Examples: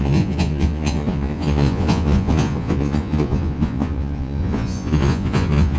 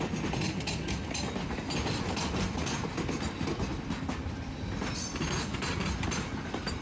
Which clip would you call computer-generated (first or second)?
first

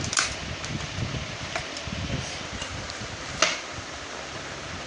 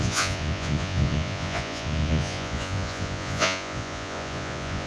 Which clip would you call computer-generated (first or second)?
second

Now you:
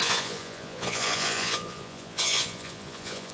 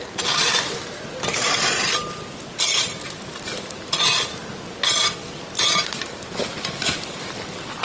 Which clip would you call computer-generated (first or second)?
first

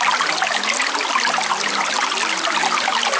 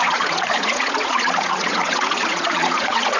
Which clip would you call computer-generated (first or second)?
second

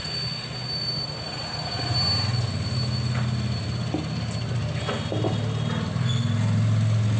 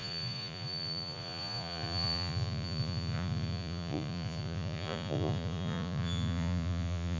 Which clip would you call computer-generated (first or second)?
second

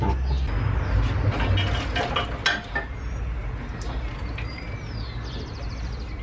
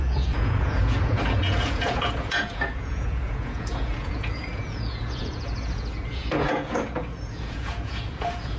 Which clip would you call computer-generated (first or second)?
second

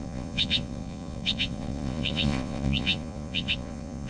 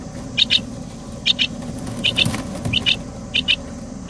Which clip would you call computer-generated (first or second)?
first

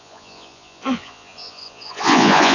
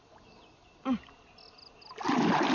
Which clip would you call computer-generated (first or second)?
first